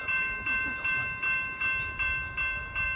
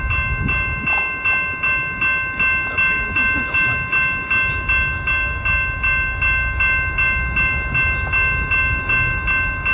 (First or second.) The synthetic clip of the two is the first